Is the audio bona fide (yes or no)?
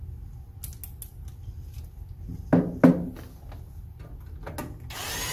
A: yes